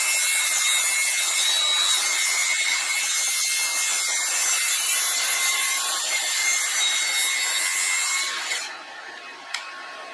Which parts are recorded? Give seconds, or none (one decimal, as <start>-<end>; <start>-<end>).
0.0-4.4; 7.1-10.1